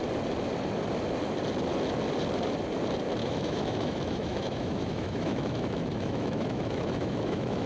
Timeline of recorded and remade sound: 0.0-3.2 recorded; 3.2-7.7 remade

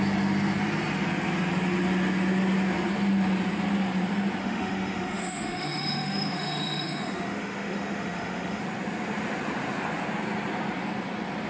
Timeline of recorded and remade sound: 0.0-4.4 recorded; 4.4-8.6 remade; 8.6-11.5 recorded

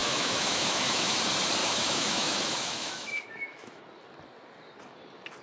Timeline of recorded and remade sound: 0.0-1.2 remade; 1.2-1.6 recorded; 1.6-3.8 remade; 3.8-5.4 recorded

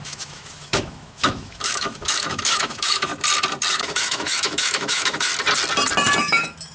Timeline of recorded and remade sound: 0.0-3.1 remade; 3.1-3.7 recorded; 3.7-5.3 remade; 5.3-6.2 recorded; 6.2-6.7 remade

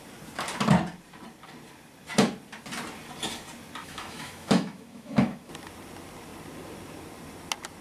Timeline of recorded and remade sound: 0.0-3.8 recorded; 3.8-5.5 remade; 5.5-7.8 recorded

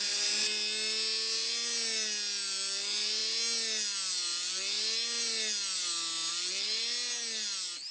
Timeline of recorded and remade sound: 0.0-7.9 recorded

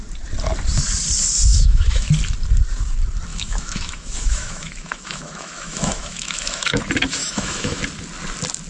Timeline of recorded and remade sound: 0.0-1.5 recorded; 1.5-2.1 remade; 2.1-3.3 recorded; 3.3-6.8 remade; 6.8-7.2 recorded; 7.2-7.8 remade; 7.8-8.7 recorded

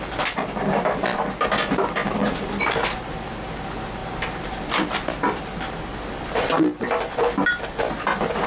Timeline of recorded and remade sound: 0.0-8.5 recorded